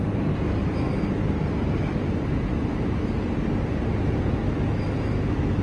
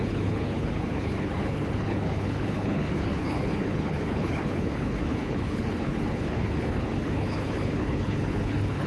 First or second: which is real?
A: first